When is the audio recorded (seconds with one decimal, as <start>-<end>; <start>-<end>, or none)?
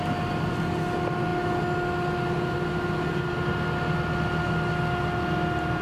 0.0-5.8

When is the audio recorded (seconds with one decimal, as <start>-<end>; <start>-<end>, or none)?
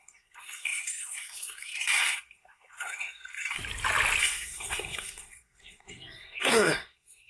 3.6-4.2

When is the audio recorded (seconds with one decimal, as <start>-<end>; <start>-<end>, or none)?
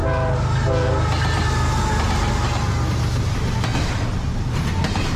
0.0-5.2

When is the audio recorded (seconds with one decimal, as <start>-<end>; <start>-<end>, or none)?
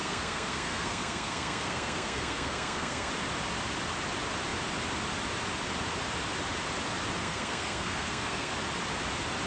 3.1-7.2; 8.5-9.5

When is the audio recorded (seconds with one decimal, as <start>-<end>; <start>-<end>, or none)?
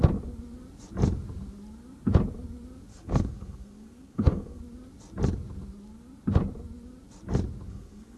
0.0-2.9; 4.6-7.7